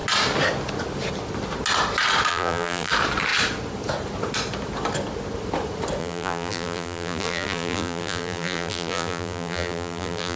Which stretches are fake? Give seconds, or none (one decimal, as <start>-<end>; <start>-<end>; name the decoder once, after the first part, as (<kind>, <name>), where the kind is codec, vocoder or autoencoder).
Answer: 2.3-2.9 (vocoder, BigVGAN v2); 6.0-10.4